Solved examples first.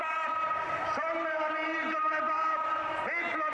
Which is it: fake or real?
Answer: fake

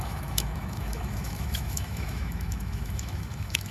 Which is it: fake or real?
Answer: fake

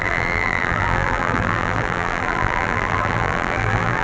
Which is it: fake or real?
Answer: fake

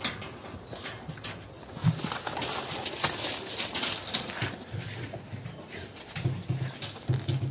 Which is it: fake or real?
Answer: real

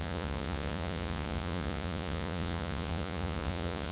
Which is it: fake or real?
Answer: fake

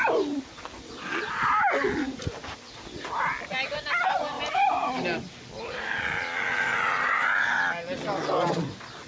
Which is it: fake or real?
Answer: real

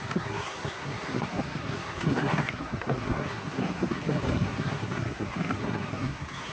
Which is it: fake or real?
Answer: fake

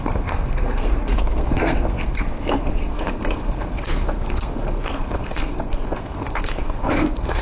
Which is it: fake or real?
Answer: fake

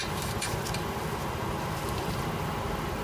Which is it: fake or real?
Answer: real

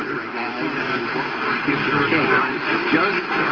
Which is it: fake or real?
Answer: real